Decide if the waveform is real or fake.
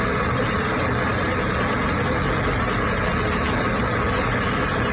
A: real